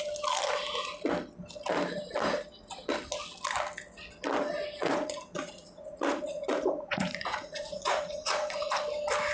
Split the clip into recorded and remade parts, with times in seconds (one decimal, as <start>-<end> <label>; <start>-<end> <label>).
0.0-4.8 recorded; 4.8-8.8 remade; 8.8-9.3 recorded